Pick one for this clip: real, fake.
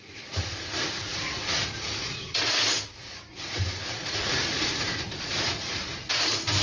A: fake